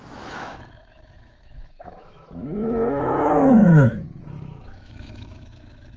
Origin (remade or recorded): remade